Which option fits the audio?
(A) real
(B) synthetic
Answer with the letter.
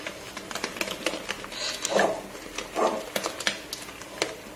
A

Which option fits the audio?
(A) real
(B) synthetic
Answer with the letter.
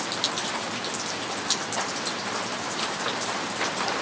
A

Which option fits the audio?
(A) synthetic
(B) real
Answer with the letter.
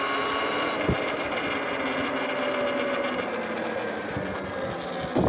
B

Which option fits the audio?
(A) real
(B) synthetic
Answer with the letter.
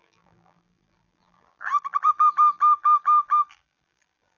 B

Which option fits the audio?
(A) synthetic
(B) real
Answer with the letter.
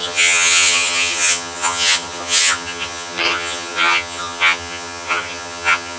A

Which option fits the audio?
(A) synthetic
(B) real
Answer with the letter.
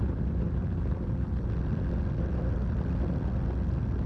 B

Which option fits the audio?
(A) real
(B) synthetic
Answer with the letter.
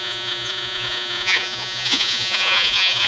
B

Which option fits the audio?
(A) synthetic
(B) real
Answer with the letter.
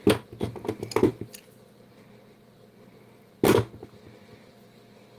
B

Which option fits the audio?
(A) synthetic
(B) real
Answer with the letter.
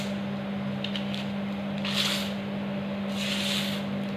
B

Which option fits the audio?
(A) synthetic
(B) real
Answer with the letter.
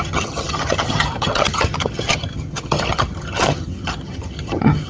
A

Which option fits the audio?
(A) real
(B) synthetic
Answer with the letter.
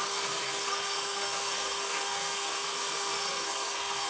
B